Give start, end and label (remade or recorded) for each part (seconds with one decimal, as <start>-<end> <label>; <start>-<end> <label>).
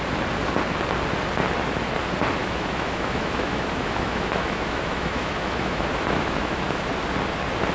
0.0-2.4 recorded; 2.4-6.9 remade; 6.9-7.7 recorded